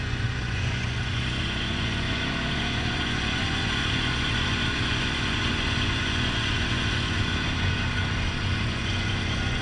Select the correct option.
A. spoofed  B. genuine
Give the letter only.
A